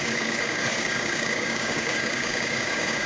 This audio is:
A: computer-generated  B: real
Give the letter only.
A